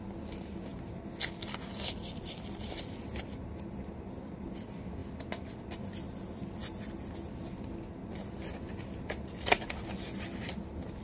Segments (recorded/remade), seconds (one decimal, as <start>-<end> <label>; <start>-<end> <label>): 0.0-11.0 recorded